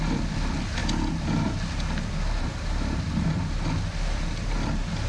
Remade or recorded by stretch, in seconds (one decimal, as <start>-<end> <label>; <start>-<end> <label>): 0.0-5.1 recorded

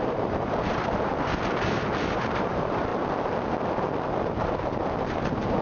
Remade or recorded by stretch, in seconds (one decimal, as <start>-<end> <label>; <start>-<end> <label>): 0.0-2.9 remade; 2.9-5.0 recorded; 5.0-5.6 remade

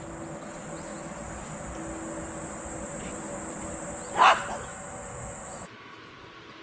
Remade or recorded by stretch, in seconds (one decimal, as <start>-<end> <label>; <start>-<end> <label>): 0.0-4.7 recorded; 4.7-6.0 remade; 6.0-6.6 recorded

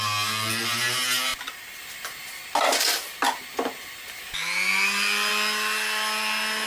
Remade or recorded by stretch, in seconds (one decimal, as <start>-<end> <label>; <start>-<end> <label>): 0.0-6.7 recorded